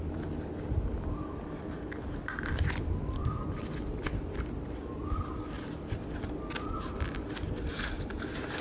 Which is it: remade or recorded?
recorded